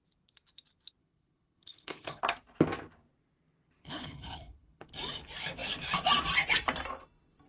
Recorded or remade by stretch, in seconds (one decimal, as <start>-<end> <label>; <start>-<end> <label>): 0.0-1.0 recorded; 1.0-2.2 remade; 2.2-3.8 recorded; 3.8-4.9 remade; 4.9-7.5 recorded